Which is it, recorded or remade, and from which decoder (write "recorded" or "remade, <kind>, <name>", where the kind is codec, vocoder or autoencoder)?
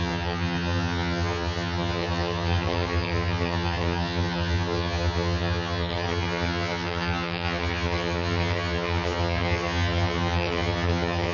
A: remade, vocoder, HiFi-GAN